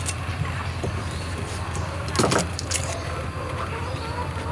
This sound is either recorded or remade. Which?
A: recorded